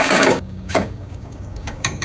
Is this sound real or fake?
fake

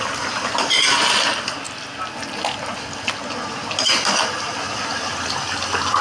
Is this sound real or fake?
real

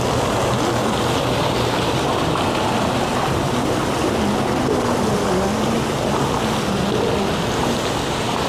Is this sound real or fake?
real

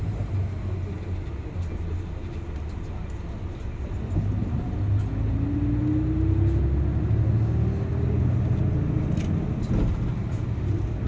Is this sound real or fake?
real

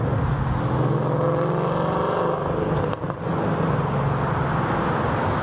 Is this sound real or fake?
real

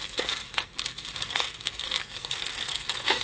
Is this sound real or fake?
fake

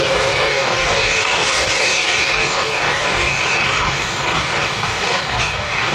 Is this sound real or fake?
fake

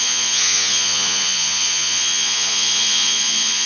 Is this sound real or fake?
fake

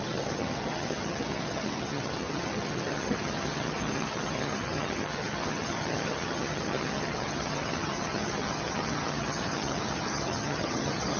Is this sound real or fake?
fake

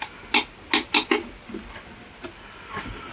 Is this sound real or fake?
real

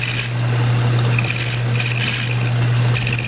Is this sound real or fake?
real